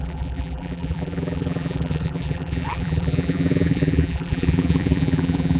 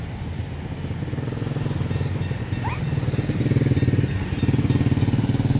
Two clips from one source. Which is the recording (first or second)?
second